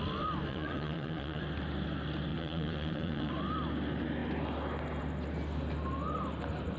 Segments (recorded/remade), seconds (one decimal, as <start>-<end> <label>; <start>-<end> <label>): 0.0-0.5 recorded; 0.5-1.4 remade; 1.4-2.3 recorded; 2.3-3.3 remade; 3.3-6.8 recorded